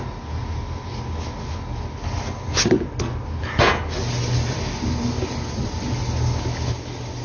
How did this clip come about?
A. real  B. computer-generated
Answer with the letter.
A